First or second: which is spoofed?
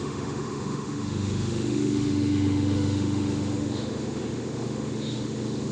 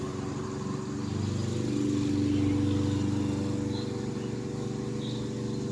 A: first